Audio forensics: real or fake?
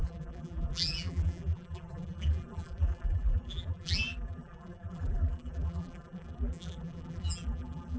fake